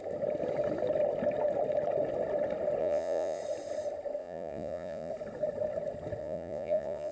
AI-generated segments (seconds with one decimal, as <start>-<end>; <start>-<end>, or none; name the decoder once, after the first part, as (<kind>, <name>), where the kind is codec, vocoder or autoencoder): 2.8-3.4 (vocoder, Vocos); 4.2-5.1; 6.2-7.1